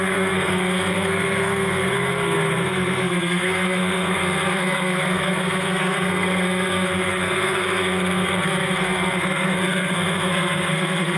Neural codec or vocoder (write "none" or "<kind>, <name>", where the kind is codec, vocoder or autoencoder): codec, SNAC